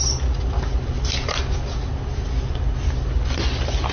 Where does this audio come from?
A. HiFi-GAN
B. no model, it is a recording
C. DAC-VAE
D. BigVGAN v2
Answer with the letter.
B